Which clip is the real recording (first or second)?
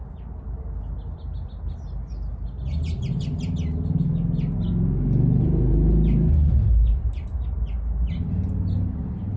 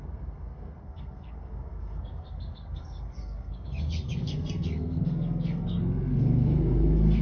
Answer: first